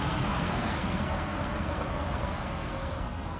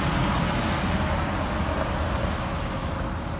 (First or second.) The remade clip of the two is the first